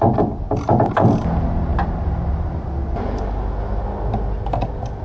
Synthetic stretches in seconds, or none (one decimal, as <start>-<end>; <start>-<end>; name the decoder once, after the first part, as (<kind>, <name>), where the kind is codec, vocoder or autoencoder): none